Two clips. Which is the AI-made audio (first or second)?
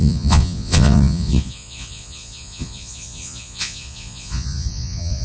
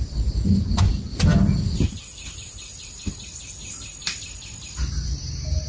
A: first